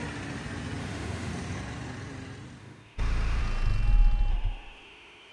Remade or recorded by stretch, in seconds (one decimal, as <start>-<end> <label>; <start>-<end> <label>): 0.0-0.8 recorded; 0.8-1.3 remade; 1.3-2.6 recorded; 2.6-3.4 remade; 3.4-4.3 recorded; 4.3-5.3 remade